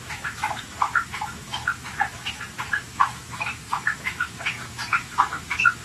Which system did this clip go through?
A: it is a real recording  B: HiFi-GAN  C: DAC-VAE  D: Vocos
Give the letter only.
C